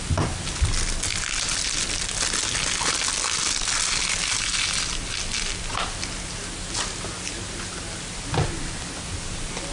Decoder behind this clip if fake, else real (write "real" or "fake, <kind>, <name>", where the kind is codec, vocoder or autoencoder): real